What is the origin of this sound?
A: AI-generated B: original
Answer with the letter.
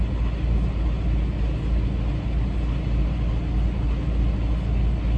B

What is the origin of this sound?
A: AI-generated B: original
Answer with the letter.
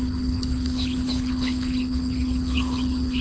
A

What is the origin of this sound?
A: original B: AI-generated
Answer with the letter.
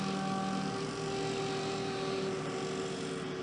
A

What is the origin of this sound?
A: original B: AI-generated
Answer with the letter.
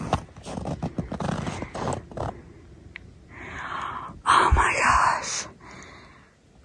A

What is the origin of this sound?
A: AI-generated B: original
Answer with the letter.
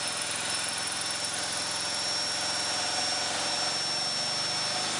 B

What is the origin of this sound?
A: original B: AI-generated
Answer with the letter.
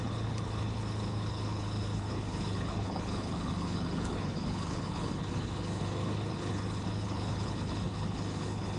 B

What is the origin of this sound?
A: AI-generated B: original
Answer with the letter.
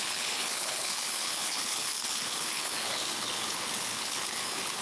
A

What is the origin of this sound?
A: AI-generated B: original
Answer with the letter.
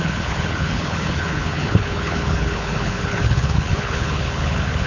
A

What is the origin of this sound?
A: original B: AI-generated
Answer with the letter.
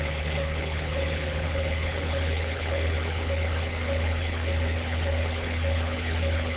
B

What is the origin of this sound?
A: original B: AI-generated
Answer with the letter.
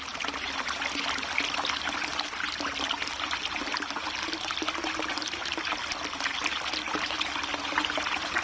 A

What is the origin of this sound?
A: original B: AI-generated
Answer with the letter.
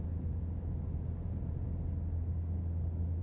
A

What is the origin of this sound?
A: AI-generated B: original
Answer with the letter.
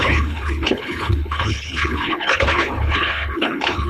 A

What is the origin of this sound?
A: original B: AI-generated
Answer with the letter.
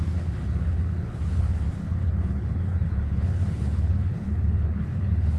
B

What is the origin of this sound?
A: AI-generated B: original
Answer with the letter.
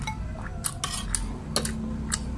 B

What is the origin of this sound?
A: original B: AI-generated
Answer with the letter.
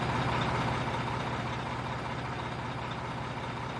A